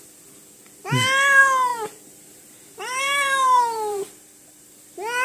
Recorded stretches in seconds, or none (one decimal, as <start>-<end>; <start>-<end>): 0.0-1.7; 4.8-5.2